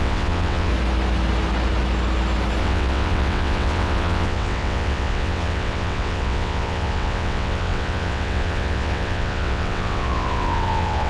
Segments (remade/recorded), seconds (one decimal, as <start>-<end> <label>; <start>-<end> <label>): 0.0-0.7 remade; 0.7-2.6 recorded; 2.6-11.1 remade